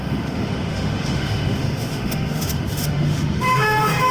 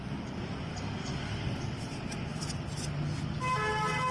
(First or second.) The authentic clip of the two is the second